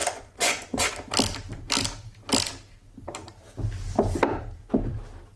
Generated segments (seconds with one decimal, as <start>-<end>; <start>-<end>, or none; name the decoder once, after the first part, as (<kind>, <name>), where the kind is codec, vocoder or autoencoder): 0.0-0.9 (vocoder, Vocos)